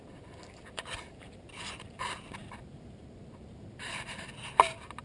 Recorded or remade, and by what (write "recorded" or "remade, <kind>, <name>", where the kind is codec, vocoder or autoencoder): remade, vocoder, BigVGAN v2